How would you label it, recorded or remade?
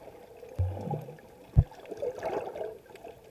recorded